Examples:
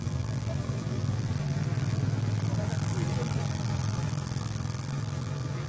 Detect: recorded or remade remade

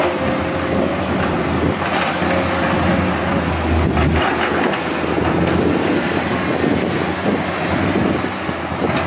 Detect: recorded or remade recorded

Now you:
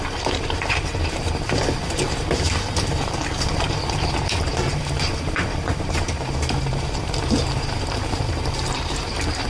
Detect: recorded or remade remade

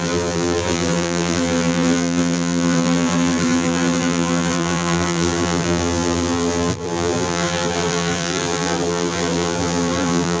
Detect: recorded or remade remade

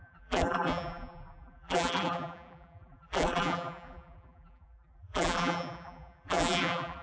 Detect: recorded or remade remade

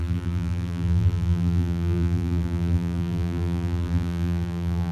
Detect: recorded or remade remade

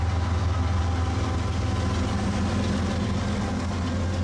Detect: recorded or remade recorded